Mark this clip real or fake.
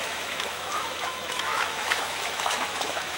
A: fake